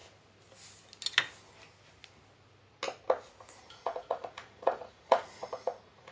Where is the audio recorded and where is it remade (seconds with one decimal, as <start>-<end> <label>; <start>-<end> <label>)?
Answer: 0.0-3.6 recorded; 3.6-6.1 remade